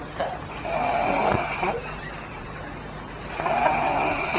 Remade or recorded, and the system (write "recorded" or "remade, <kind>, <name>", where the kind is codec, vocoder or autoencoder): recorded